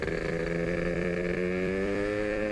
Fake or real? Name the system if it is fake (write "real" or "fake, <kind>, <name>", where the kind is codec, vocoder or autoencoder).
fake, vocoder, BigVGAN v2